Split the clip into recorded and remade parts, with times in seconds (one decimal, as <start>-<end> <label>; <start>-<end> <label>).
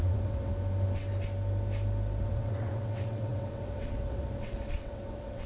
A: 0.0-0.5 remade; 0.5-2.2 recorded; 2.2-5.5 remade